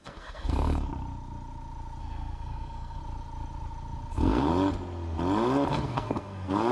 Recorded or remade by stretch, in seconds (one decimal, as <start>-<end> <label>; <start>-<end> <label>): 0.0-0.9 remade; 0.9-2.0 recorded; 2.0-3.0 remade; 3.0-4.1 recorded; 4.1-4.5 remade; 4.5-5.7 recorded; 5.7-6.7 remade

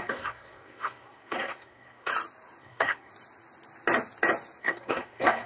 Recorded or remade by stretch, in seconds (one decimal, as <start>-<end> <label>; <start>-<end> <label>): 0.0-2.1 remade; 2.1-2.6 recorded; 2.6-3.1 remade; 3.1-4.6 recorded; 4.6-5.5 remade